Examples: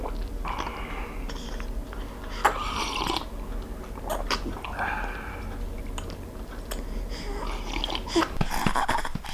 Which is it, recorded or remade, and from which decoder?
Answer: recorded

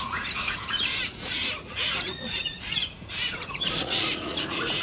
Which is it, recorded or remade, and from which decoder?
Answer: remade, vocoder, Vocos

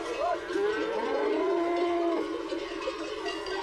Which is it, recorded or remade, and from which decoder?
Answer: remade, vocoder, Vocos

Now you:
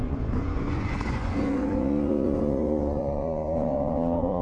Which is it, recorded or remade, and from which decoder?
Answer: remade, vocoder, Vocos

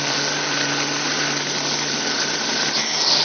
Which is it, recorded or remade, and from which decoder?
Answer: recorded